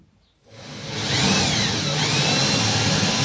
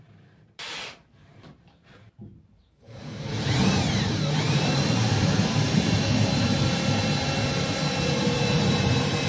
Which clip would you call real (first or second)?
first